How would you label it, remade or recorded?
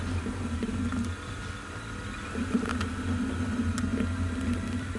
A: recorded